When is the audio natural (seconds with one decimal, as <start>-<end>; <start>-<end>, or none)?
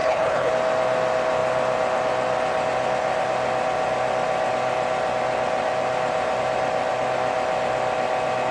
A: 0.5-8.5